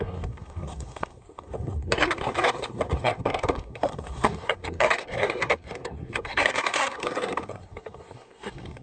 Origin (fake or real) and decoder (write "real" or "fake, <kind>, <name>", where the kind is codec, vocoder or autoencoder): fake, codec, SNAC